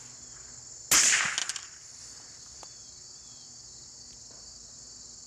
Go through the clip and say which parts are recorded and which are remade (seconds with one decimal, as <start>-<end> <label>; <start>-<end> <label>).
0.0-1.4 recorded; 1.4-2.0 remade; 2.0-5.3 recorded